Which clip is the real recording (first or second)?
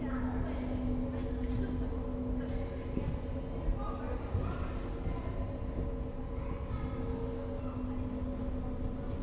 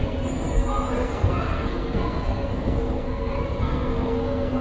first